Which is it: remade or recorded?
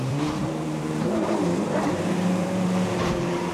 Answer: remade